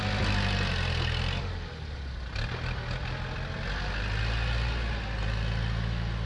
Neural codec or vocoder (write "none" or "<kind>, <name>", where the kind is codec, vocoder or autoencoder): none